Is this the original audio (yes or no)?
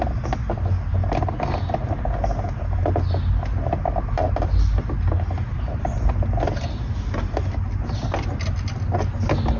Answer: yes